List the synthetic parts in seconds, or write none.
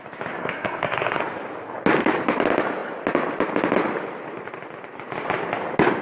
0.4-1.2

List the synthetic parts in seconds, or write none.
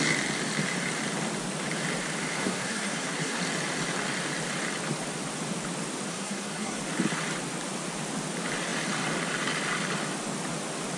2.4-3.4; 6.1-6.8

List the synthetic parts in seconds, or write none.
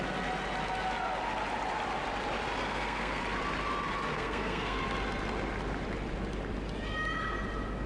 2.6-3.2; 4.1-4.8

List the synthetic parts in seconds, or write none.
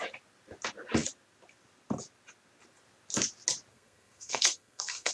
3.7-5.1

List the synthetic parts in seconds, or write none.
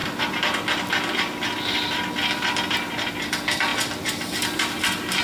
none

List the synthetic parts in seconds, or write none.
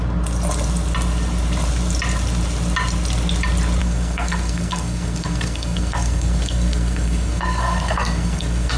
3.8-8.8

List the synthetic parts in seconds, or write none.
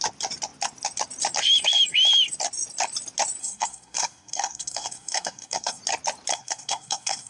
3.4-5.8; 6.3-7.3